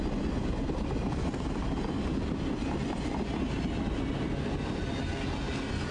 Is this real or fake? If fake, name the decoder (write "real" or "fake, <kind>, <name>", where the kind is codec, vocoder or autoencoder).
real